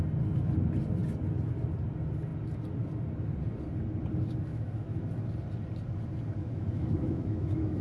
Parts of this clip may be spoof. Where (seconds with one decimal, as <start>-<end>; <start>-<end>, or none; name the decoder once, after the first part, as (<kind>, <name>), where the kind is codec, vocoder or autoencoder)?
4.5-5.0 (autoencoder, DAC-VAE); 6.4-7.8